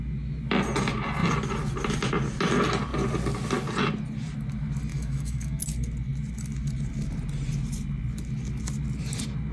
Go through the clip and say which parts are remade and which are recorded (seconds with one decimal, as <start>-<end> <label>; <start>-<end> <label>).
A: 0.0-4.9 recorded; 4.9-5.6 remade; 5.6-9.5 recorded